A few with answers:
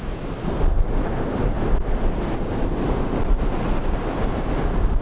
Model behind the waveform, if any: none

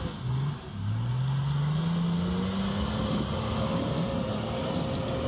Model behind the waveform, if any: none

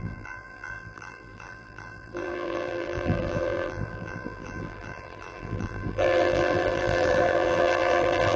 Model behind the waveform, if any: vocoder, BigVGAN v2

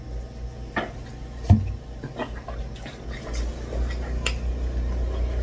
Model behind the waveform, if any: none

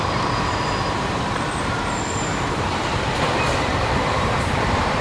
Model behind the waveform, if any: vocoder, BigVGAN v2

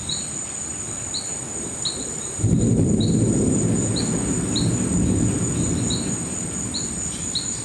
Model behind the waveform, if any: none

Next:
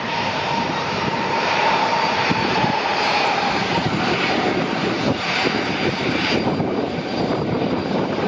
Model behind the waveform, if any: vocoder, BigVGAN v2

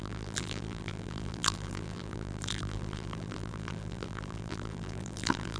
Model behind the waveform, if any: vocoder, BigVGAN v2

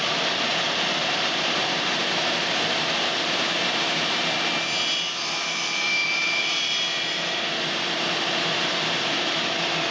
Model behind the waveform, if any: vocoder, BigVGAN v2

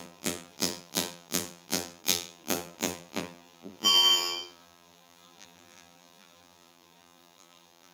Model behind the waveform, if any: vocoder, BigVGAN v2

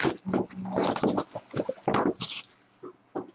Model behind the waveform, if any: none